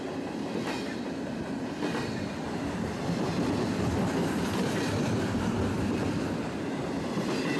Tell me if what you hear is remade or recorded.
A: recorded